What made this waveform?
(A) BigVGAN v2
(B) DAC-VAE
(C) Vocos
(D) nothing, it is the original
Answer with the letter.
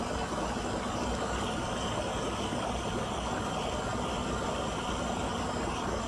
D